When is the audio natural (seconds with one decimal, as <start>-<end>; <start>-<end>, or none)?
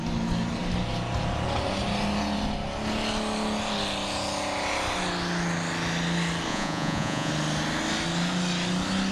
0.0-6.5; 7.3-9.1